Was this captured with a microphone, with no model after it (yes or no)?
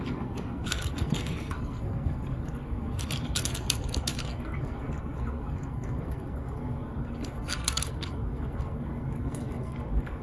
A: no